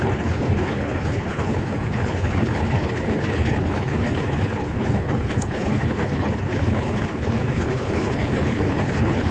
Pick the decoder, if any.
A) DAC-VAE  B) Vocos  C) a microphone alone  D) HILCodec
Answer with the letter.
D